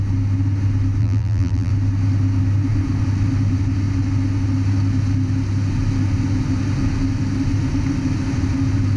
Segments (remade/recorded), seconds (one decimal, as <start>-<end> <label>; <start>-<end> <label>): 0.0-1.0 recorded; 1.0-1.7 remade; 1.7-9.0 recorded

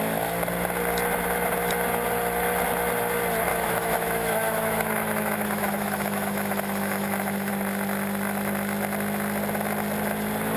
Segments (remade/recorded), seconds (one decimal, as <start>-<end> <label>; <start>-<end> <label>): 0.0-3.5 recorded; 3.5-7.5 remade; 7.5-10.6 recorded

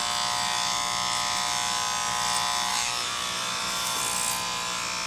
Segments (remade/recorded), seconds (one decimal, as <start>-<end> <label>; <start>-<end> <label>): 0.0-2.7 recorded; 2.7-4.0 remade; 4.0-5.1 recorded

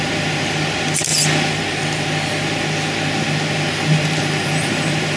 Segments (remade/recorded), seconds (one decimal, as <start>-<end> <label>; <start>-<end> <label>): 0.0-5.2 recorded

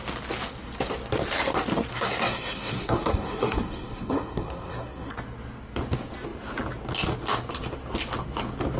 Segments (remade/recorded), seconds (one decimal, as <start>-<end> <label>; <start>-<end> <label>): 0.0-1.9 recorded; 1.9-5.1 remade; 5.1-8.8 recorded

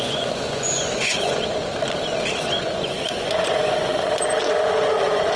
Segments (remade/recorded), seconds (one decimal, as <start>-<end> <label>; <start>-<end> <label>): 0.0-1.7 remade; 1.7-2.4 recorded; 2.4-5.4 remade

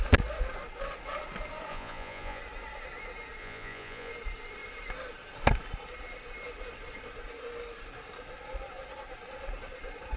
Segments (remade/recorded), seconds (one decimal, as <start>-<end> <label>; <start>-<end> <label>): 0.0-1.7 recorded; 1.7-2.4 remade; 2.4-3.4 recorded; 3.4-4.1 remade; 4.1-10.2 recorded